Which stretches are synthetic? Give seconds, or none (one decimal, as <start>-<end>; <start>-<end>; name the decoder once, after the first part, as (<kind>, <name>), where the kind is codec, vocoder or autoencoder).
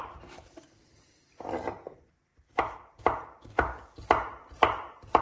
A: 2.3-3.0 (vocoder, BigVGAN v2); 4.4-5.2